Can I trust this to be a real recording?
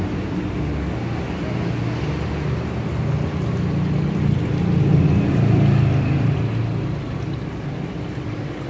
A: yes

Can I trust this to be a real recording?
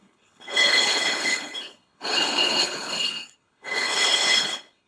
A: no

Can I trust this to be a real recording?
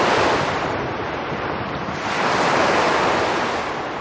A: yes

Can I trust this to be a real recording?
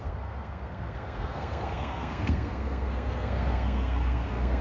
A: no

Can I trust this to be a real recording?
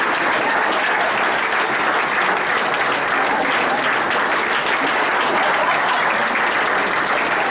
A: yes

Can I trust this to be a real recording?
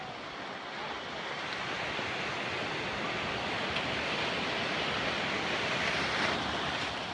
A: yes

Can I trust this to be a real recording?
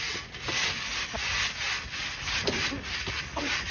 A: yes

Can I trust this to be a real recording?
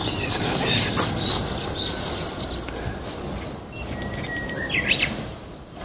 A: yes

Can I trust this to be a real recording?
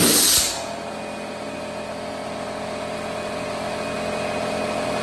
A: yes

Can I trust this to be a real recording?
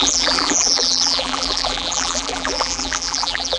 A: no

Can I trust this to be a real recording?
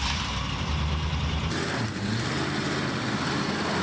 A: yes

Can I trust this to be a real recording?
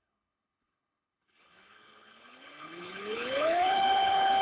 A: no